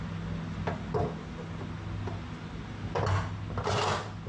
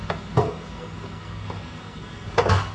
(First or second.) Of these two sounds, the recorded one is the first